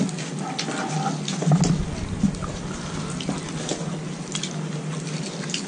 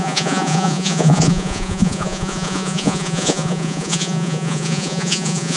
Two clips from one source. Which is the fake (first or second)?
second